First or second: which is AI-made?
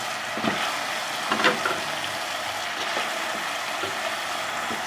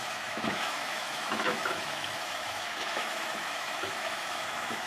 second